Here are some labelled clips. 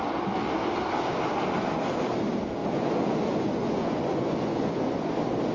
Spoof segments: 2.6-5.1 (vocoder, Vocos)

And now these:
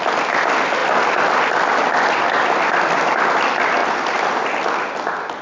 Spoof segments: none

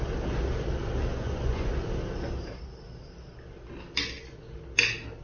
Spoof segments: 1.1-1.7 (vocoder, Vocos)